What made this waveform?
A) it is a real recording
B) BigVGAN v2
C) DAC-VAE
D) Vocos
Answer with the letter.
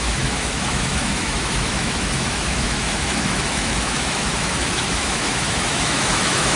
C